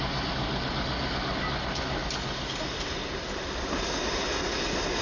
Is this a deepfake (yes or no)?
no